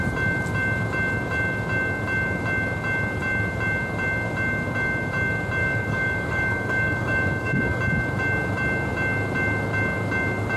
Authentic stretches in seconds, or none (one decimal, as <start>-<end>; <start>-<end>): 0.0-5.6; 7.8-10.6